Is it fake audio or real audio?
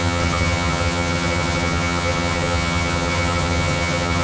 fake